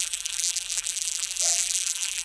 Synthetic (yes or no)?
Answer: yes